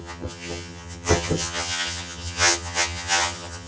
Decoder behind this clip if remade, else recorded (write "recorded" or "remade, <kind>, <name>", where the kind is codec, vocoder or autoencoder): remade, vocoder, HiFi-GAN